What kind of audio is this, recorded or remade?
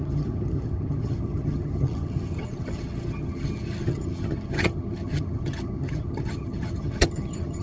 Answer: remade